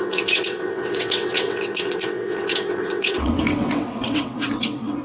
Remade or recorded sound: remade